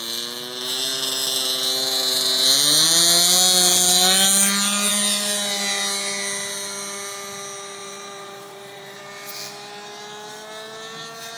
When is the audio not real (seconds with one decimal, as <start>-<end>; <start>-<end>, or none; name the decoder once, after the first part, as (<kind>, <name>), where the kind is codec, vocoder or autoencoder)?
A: 7.8-9.0 (vocoder, BigVGAN v2)